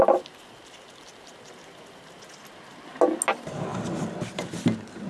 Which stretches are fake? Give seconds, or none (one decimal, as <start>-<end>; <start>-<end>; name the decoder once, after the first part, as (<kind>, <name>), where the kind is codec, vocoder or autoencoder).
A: none